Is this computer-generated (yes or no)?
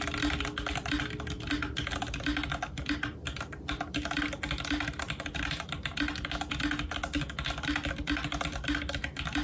no